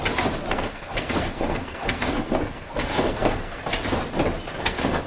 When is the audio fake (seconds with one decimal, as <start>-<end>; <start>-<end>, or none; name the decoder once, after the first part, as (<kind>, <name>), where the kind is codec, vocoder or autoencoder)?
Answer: 0.5-3.6 (codec, SNAC); 4.6-5.1

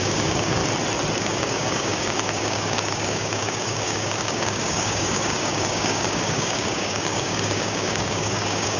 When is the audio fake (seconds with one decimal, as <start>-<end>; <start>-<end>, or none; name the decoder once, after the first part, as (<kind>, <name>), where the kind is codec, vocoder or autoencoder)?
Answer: 0.0-0.6 (codec, DAC); 1.2-8.8

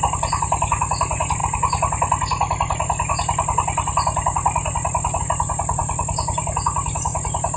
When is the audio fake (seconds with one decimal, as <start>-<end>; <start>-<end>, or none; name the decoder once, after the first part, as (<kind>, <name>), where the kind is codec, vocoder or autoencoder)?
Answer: none

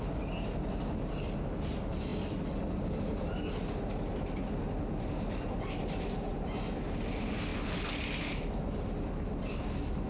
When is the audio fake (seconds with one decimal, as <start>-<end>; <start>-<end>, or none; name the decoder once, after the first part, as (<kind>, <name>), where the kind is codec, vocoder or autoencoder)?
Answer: none

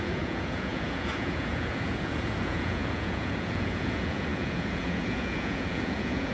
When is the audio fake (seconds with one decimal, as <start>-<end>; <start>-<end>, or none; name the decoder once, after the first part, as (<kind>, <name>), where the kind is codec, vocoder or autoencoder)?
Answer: 0.0-6.3 (vocoder, Vocos)